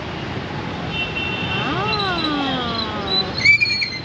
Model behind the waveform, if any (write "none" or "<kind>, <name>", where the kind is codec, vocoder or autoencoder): none